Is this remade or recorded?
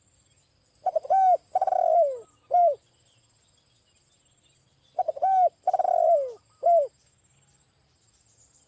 recorded